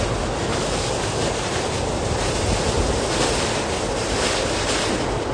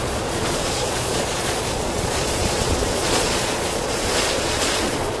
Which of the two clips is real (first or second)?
first